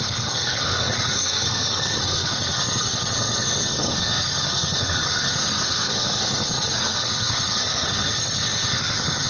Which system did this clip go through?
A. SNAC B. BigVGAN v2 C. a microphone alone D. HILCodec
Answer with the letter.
A